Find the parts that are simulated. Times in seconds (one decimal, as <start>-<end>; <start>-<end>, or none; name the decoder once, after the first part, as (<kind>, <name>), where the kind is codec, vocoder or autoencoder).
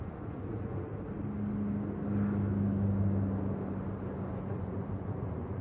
0.0-0.9 (vocoder, Vocos); 4.3-5.6